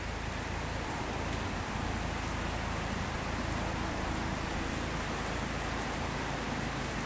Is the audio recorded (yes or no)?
yes